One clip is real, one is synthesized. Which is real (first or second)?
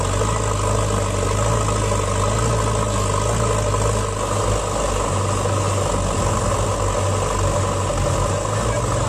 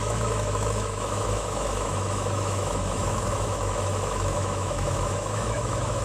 first